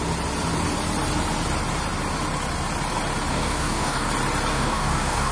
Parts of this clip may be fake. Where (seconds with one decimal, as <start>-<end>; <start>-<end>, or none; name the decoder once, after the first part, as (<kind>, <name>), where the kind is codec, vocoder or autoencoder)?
3.3-4.1 (codec, DAC); 4.5-5.3